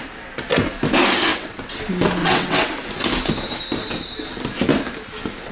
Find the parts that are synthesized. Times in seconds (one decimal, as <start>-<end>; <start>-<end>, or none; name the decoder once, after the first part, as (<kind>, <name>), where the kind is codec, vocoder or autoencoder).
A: 1.3-1.8 (vocoder, WaveNeXt); 2.2-2.7